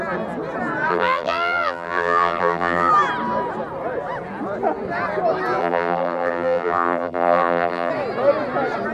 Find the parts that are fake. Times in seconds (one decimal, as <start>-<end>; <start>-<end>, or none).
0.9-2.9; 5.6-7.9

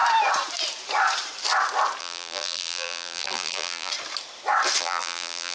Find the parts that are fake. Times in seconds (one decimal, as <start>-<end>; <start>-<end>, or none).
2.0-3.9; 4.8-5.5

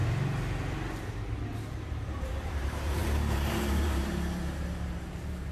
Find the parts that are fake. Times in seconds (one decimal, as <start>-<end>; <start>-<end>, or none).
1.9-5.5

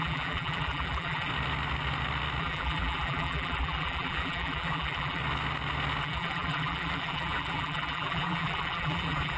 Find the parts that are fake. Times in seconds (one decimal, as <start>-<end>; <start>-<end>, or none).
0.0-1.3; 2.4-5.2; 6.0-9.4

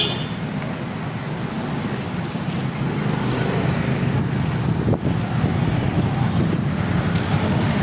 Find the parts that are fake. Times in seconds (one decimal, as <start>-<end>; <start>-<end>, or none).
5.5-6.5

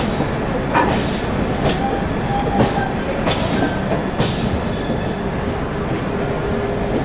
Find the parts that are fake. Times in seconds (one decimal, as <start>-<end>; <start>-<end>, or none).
2.3-3.6

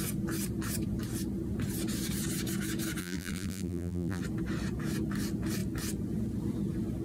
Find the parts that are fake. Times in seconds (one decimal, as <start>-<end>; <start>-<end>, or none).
3.0-4.2

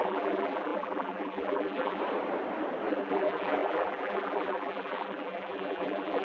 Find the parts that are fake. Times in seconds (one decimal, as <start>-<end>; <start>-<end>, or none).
0.0-2.0; 2.9-6.2